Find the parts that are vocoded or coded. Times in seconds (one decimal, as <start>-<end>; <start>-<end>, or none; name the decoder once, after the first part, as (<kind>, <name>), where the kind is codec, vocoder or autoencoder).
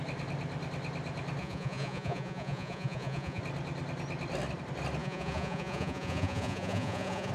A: 1.4-3.4 (vocoder, Vocos); 5.0-7.3